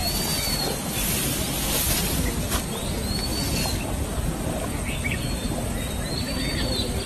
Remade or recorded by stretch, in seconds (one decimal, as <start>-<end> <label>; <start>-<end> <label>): 0.0-7.1 recorded